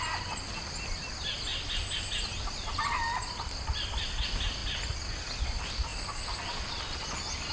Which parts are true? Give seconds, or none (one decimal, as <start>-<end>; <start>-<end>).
0.0-7.5